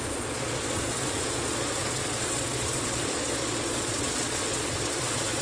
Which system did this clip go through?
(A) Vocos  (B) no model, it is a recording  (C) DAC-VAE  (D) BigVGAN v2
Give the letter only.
A